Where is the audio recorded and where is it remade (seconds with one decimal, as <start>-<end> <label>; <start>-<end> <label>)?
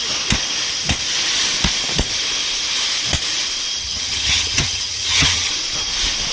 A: 0.0-3.8 recorded; 3.8-5.5 remade; 5.5-6.3 recorded